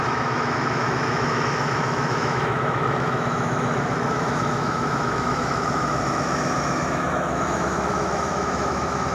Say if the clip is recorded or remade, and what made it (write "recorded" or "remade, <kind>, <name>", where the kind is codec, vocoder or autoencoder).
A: remade, autoencoder, DAC-VAE